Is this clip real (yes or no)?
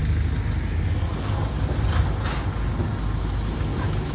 yes